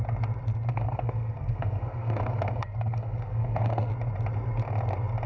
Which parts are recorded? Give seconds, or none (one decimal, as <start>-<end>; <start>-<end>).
0.0-0.7; 3.9-5.3